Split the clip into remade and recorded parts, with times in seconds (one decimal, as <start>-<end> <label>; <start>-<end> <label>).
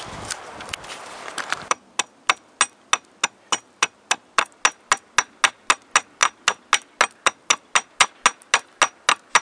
0.0-0.4 recorded; 0.4-1.8 remade; 1.8-9.4 recorded